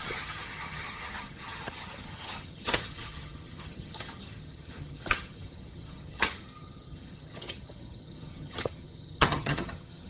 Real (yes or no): no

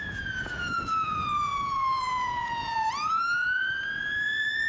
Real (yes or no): no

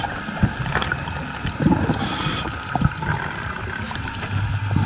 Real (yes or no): yes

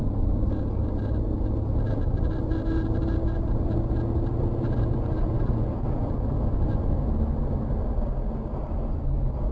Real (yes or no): yes